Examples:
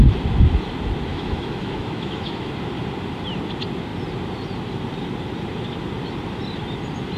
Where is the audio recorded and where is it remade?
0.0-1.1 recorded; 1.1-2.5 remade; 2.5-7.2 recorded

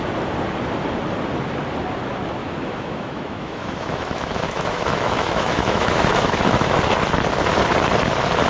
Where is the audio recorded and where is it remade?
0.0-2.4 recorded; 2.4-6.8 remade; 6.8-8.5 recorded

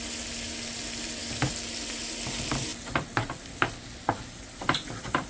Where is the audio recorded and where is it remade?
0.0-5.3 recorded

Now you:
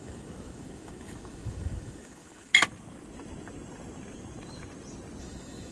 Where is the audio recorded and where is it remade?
0.0-2.5 remade; 2.5-5.2 recorded; 5.2-5.7 remade

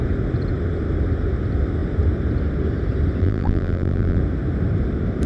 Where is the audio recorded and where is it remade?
0.0-3.2 recorded; 3.2-4.2 remade; 4.2-5.3 recorded

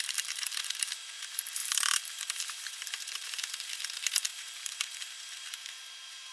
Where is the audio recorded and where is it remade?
0.0-6.3 remade

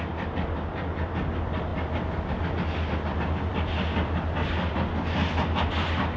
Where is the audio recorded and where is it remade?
0.0-6.2 recorded